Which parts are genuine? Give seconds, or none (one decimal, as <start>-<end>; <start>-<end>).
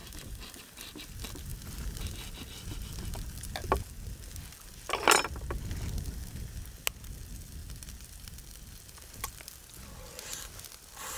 0.0-11.2